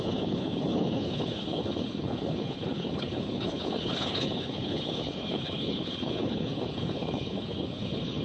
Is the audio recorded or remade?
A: remade